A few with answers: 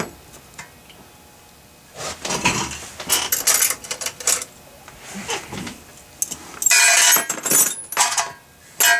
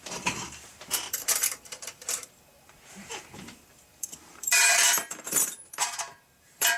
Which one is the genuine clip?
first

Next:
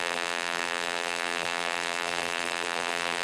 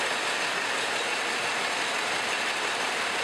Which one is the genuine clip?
second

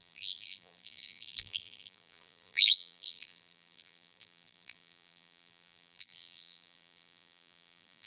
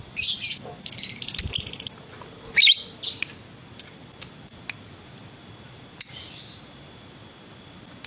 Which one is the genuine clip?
second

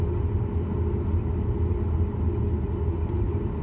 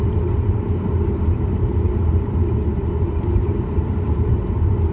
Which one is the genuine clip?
first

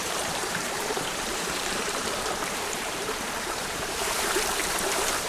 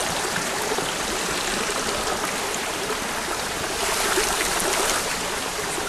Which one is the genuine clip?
second